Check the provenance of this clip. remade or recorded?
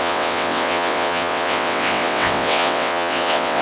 remade